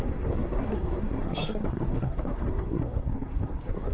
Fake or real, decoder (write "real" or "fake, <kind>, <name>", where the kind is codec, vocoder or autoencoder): fake, codec, SNAC